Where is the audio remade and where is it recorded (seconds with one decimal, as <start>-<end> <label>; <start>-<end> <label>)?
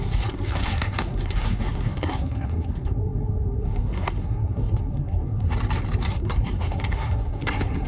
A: 0.0-5.5 remade; 5.5-6.1 recorded; 6.1-7.9 remade